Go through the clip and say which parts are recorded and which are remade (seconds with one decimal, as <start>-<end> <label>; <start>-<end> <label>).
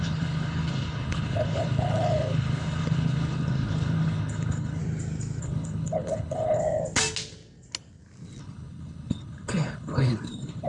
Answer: 0.0-4.8 remade; 4.8-5.4 recorded; 5.4-6.6 remade; 6.6-8.4 recorded; 8.4-10.7 remade